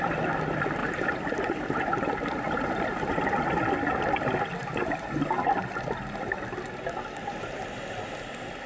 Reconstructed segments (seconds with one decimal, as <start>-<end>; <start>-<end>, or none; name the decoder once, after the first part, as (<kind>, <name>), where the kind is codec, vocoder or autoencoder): 0.8-2.1 (vocoder, BigVGAN v2)